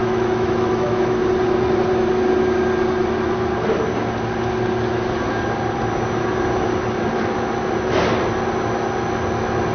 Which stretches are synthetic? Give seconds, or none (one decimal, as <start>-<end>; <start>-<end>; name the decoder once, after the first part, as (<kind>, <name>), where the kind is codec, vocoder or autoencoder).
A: 0.0-1.2 (autoencoder, DAC-VAE)

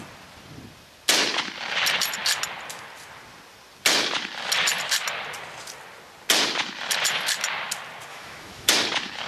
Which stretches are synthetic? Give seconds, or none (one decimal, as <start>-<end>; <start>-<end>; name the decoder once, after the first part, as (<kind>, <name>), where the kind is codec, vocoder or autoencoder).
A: 8.1-8.7 (autoencoder, DAC-VAE)

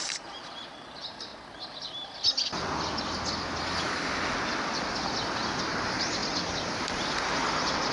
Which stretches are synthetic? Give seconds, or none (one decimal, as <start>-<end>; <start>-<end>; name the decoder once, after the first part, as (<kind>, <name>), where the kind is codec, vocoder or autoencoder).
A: 0.0-1.3 (vocoder, BigVGAN v2); 5.6-6.2